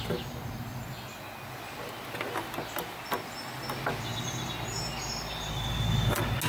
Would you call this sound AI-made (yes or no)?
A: no